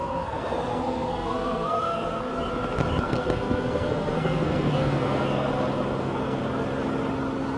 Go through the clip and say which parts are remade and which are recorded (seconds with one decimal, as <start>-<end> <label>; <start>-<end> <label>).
0.0-2.3 remade; 2.3-3.0 recorded; 3.0-5.5 remade; 5.5-6.0 recorded; 6.0-6.4 remade; 6.4-7.6 recorded